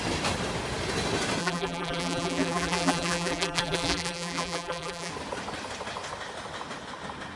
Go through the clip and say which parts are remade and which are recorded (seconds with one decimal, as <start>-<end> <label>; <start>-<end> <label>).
0.0-1.4 recorded; 1.4-5.1 remade; 5.1-7.4 recorded